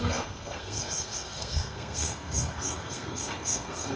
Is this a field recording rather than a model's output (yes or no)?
no